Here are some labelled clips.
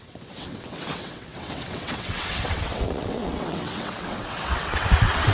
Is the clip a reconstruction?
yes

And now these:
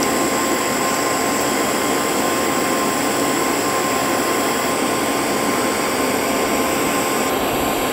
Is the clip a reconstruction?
no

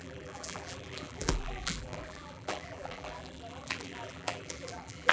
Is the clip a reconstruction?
yes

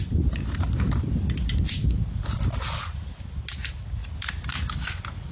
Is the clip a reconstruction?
no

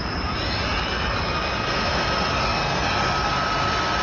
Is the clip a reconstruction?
no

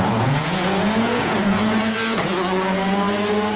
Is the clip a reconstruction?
yes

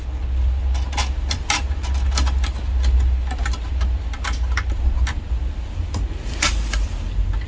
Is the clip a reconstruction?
no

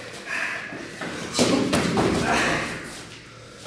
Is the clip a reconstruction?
no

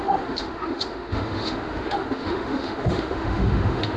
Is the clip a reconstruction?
yes